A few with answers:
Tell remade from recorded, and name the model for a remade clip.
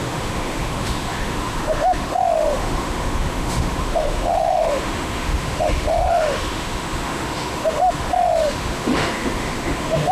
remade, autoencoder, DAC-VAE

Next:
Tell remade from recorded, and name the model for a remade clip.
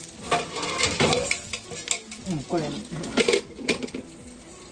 recorded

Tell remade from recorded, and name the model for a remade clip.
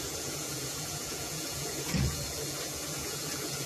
remade, vocoder, Vocos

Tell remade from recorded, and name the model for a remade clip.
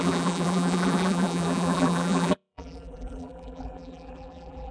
remade, vocoder, BigVGAN v2